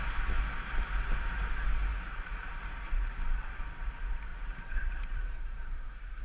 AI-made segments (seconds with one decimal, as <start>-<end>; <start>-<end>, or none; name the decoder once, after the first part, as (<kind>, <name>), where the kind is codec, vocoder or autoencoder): 1.9-3.6 (vocoder, BigVGAN v2); 4.3-5.7